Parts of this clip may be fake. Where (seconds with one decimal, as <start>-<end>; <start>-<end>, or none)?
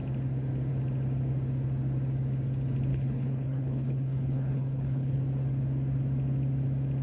2.9-5.2